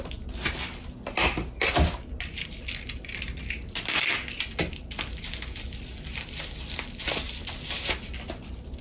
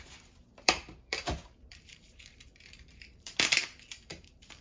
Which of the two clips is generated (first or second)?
second